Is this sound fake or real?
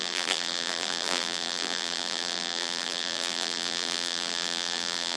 fake